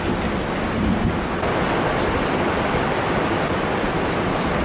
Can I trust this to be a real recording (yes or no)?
yes